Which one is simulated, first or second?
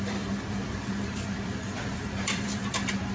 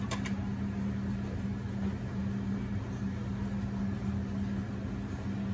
first